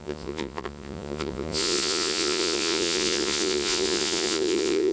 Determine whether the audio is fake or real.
fake